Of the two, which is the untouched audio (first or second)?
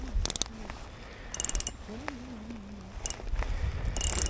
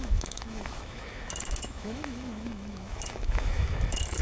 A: first